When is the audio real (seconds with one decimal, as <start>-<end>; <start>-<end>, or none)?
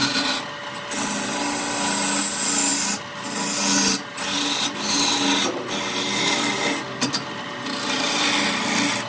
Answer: 0.0-9.1